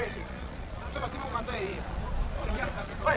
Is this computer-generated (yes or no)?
yes